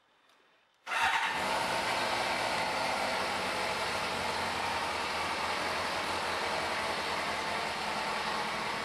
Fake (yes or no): no